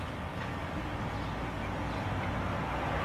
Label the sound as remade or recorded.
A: recorded